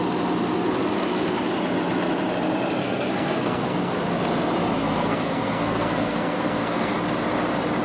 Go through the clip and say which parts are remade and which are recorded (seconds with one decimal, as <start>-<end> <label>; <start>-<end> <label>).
0.0-2.8 recorded; 2.8-3.9 remade; 3.9-4.8 recorded; 4.8-7.0 remade; 7.0-7.8 recorded